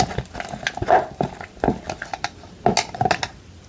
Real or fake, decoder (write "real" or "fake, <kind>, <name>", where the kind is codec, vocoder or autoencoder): real